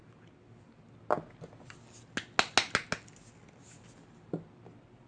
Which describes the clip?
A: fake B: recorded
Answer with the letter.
B